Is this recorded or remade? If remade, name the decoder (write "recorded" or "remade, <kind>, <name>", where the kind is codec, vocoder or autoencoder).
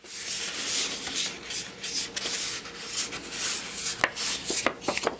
recorded